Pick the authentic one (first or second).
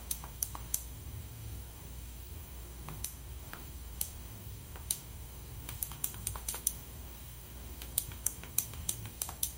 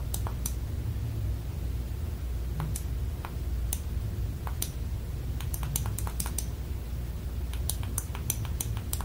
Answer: second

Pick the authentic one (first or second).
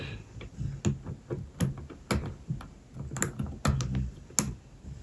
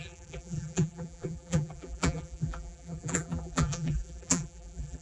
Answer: first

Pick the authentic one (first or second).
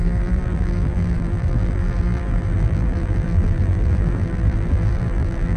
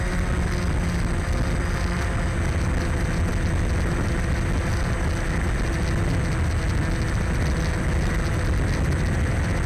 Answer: second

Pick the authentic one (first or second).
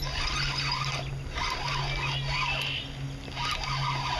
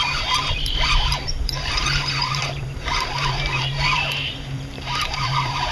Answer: first